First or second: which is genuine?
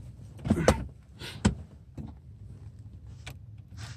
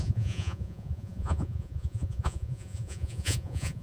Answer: first